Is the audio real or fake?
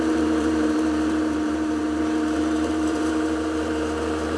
fake